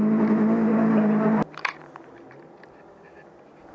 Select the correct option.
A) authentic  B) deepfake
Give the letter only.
A